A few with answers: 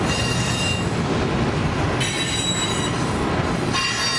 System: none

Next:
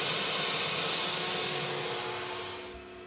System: none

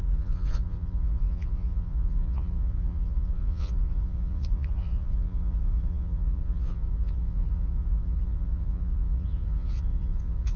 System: vocoder, Vocos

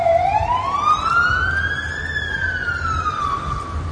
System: none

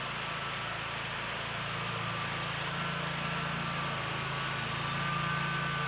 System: none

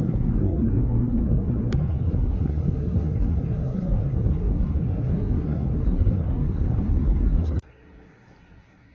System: codec, SNAC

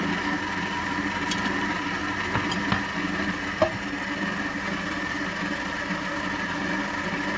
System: none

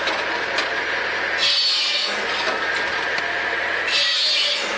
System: none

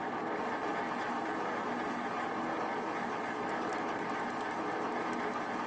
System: none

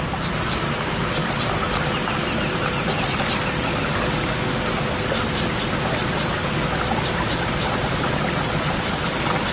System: none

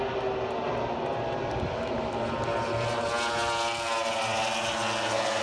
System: none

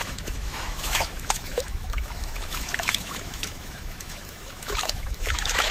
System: autoencoder, DAC-VAE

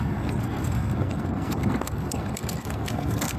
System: codec, SNAC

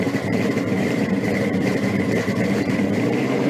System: vocoder, BigVGAN v2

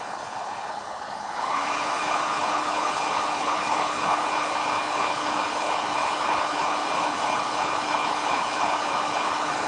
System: codec, HILCodec